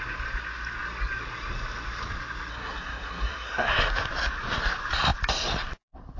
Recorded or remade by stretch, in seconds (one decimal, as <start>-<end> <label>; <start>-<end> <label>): 0.0-2.5 recorded; 2.5-3.7 remade; 3.7-6.2 recorded